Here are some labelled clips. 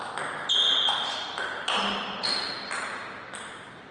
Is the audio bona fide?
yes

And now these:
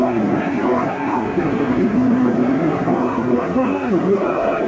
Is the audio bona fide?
no